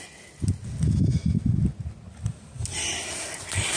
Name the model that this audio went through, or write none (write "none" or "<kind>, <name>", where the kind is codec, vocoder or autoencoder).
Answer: none